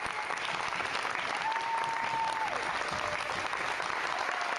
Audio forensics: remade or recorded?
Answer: recorded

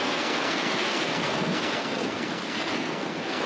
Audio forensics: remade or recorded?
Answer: remade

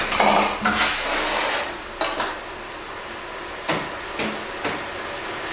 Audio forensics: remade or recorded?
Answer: recorded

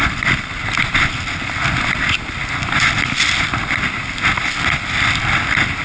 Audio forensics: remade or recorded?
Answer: recorded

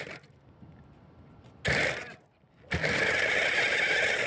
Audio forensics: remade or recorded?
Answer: recorded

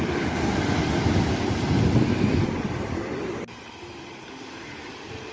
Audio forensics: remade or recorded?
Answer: recorded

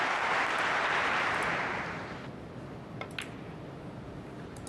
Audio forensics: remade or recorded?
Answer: recorded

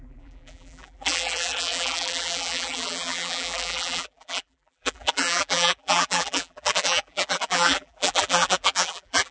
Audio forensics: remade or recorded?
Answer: remade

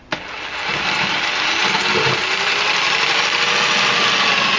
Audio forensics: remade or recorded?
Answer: recorded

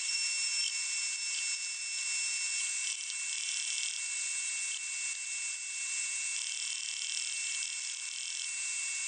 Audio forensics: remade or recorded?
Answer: recorded